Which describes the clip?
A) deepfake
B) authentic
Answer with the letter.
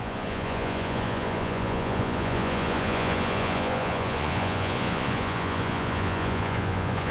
A